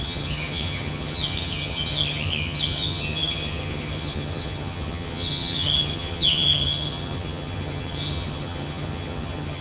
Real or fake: fake